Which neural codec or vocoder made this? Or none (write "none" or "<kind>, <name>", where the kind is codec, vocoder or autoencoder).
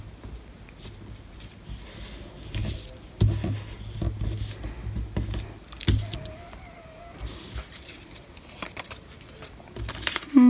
none